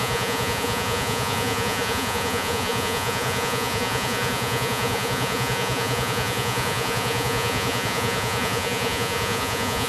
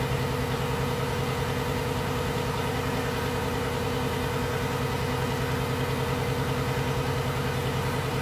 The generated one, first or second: first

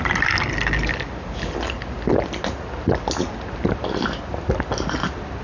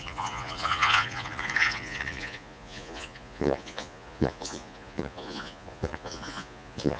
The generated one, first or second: second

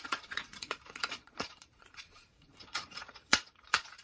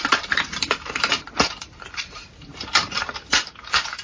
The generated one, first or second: first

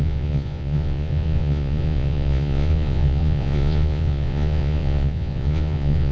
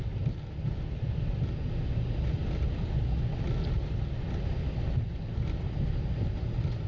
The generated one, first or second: first